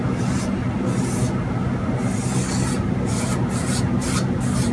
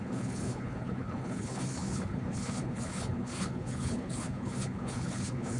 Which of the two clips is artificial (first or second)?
second